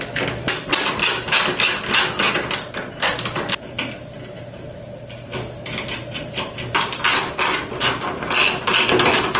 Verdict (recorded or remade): recorded